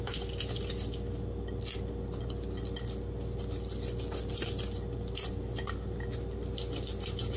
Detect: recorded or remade recorded